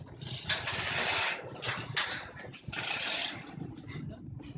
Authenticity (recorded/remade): recorded